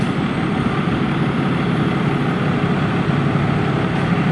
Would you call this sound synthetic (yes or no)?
no